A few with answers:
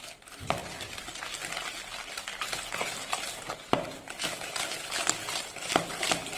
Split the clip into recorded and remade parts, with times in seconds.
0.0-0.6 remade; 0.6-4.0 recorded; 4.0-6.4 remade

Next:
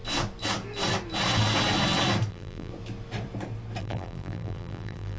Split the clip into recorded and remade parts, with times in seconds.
0.0-2.3 recorded; 2.3-2.7 remade; 2.7-3.8 recorded; 3.8-5.2 remade

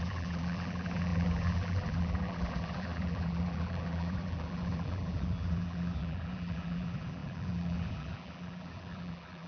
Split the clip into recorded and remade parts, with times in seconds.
0.0-9.5 remade

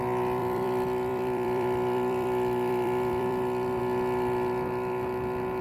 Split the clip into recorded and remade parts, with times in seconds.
0.0-0.4 recorded; 0.4-3.8 remade; 3.8-5.6 recorded